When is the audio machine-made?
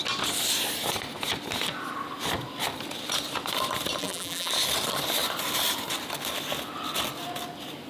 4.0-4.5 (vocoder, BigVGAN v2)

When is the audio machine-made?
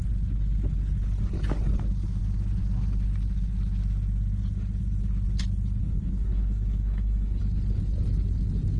5.8-7.4 (codec, HILCodec)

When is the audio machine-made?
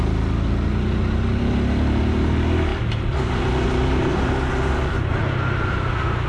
none